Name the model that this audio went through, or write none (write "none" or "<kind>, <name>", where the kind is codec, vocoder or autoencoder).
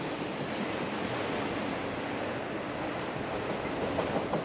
none